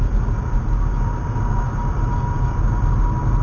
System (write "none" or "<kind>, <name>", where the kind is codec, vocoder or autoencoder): none